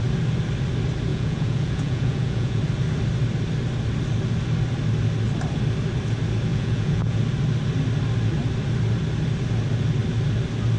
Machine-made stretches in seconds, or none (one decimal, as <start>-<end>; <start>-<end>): 1.1-2.6; 6.5-7.2

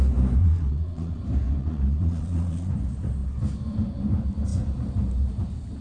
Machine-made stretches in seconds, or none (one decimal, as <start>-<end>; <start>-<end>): 0.4-1.2; 1.6-2.7

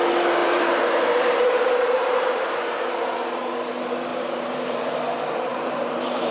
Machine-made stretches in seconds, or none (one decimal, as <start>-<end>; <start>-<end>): 0.4-2.7; 4.1-4.9; 5.5-6.3

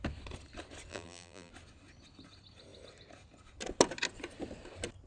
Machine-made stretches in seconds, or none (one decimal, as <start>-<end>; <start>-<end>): 0.9-1.5